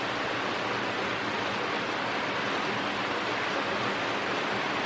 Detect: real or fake real